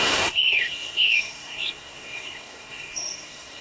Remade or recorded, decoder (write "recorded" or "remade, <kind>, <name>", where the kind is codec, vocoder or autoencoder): remade, codec, SNAC